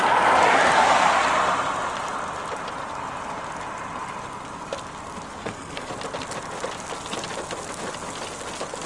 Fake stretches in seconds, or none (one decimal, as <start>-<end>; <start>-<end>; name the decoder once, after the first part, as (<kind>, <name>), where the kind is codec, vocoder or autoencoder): 5.4-5.9 (codec, SNAC)